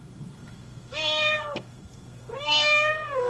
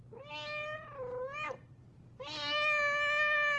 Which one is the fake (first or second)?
first